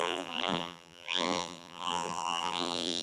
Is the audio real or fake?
fake